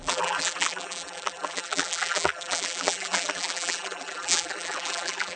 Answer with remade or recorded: remade